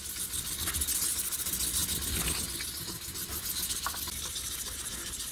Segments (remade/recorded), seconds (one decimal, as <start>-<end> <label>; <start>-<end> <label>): 0.0-5.3 recorded